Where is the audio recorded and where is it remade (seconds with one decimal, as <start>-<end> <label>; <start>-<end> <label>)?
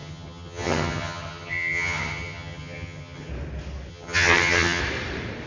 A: 0.0-3.3 remade; 3.3-3.9 recorded; 3.9-4.8 remade; 4.8-5.5 recorded